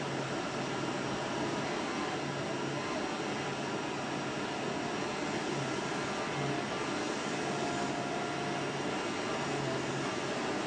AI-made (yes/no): no